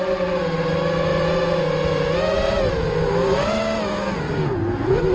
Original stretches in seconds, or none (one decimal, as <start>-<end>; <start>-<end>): 0.0-5.1